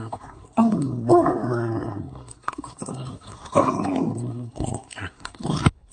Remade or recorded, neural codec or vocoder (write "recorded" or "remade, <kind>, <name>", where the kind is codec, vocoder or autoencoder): remade, codec, SNAC